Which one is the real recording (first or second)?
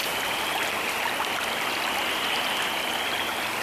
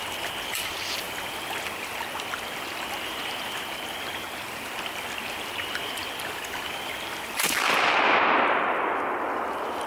first